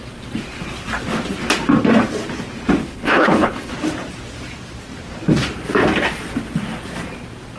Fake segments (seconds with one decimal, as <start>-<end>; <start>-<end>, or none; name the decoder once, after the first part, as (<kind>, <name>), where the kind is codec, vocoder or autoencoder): 2.8-3.7 (codec, HILCodec)

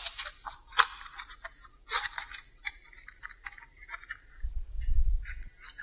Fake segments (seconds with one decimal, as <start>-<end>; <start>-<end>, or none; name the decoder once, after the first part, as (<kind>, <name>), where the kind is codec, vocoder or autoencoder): 0.0-5.8 (vocoder, BigVGAN v2)